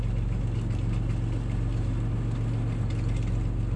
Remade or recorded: recorded